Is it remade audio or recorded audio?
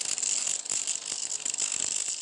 recorded